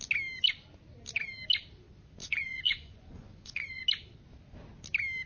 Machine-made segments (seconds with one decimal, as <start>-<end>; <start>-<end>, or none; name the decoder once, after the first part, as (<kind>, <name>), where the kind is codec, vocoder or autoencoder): 2.2-3.8 (vocoder, Vocos)